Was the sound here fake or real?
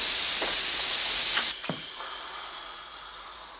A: fake